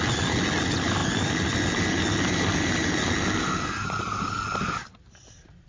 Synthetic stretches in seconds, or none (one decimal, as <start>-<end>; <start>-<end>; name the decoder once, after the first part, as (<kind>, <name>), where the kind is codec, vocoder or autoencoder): none